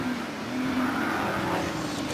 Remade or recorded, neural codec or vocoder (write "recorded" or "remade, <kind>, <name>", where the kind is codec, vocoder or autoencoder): recorded